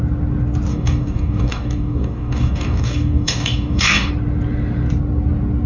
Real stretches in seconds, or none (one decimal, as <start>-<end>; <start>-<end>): 0.0-0.7; 4.1-5.7